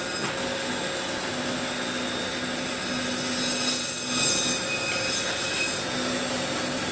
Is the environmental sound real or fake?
real